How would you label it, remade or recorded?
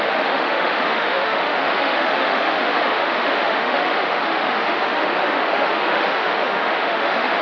remade